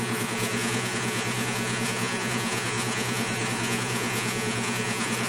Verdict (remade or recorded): remade